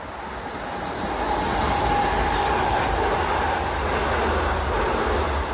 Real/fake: real